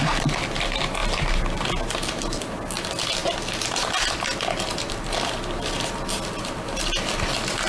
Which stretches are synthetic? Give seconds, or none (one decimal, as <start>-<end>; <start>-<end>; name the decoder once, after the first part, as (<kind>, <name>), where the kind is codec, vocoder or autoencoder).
none